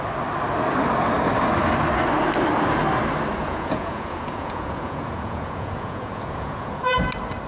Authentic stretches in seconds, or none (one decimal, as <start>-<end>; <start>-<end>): 0.0-3.4; 7.0-7.5